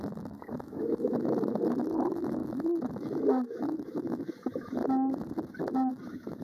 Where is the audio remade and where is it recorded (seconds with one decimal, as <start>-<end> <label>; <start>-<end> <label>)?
0.0-4.8 remade; 4.8-5.9 recorded; 5.9-6.4 remade